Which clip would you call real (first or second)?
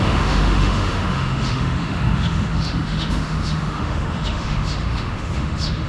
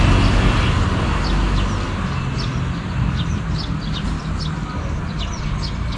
second